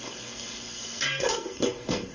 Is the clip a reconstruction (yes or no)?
yes